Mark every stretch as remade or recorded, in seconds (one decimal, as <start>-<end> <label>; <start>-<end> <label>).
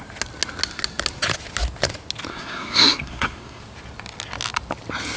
0.0-2.3 recorded; 2.3-3.6 remade; 3.6-5.2 recorded